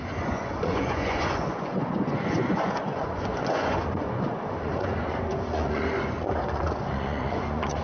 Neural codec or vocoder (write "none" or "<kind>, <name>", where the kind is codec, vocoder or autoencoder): vocoder, Vocos